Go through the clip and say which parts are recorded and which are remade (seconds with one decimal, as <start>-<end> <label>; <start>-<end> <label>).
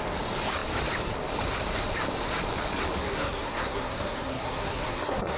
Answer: 0.0-3.0 recorded; 3.0-5.4 remade